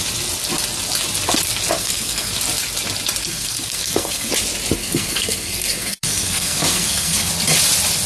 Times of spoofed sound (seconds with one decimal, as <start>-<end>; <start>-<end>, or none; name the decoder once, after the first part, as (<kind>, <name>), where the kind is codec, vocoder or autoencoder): 1.8-2.3 (codec, SNAC); 3.2-4.3; 4.8-7.3